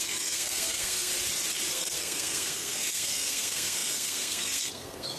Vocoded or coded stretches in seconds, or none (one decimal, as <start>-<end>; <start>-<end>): 0.0-1.1; 1.7-5.2